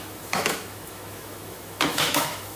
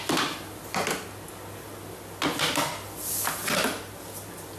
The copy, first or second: first